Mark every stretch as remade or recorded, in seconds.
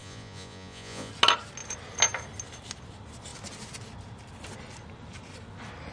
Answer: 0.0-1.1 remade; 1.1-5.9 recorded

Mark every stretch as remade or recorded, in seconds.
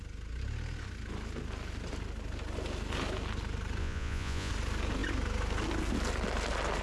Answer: 0.0-3.8 recorded; 3.8-4.5 remade; 4.5-6.8 recorded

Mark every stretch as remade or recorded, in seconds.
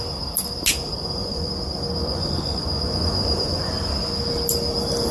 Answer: 0.0-0.9 recorded; 0.9-1.5 remade; 1.5-2.0 recorded; 2.0-3.6 remade; 3.6-5.1 recorded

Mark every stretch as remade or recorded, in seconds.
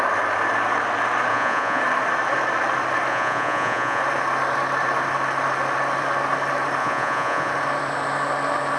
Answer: 0.0-1.3 recorded; 1.3-1.8 remade; 1.8-3.1 recorded; 3.1-4.0 remade; 4.0-6.8 recorded; 6.8-7.5 remade; 7.5-8.8 recorded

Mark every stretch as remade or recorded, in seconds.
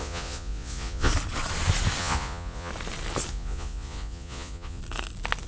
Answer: 0.0-1.1 remade; 1.1-2.0 recorded; 2.0-2.7 remade; 2.7-3.3 recorded; 3.3-4.8 remade; 4.8-5.5 recorded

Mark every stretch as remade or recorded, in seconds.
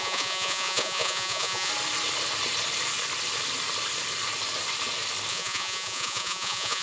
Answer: 0.0-1.7 remade; 1.7-5.3 recorded; 5.3-6.8 remade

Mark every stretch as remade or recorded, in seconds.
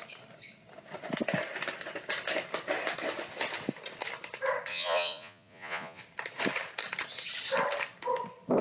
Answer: 0.0-4.7 recorded; 4.7-6.0 remade; 6.0-8.6 recorded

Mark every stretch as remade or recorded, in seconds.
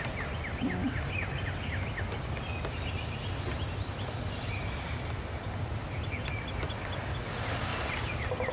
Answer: 0.0-8.5 recorded